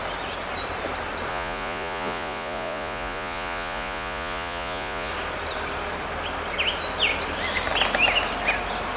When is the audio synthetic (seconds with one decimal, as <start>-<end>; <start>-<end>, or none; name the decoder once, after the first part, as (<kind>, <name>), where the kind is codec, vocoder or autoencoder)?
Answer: 1.3-5.1 (vocoder, Vocos)